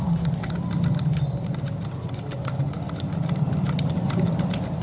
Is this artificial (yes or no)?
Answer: no